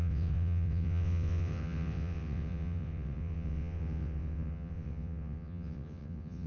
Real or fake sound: fake